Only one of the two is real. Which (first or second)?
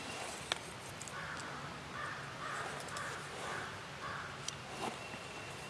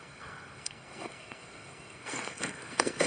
first